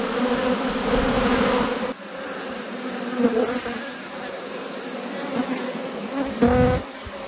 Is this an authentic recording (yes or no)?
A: yes